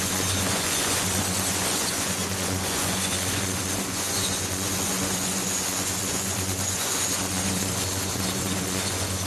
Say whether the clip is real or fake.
fake